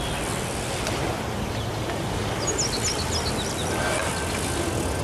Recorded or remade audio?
recorded